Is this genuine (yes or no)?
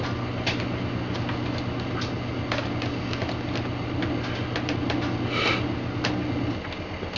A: yes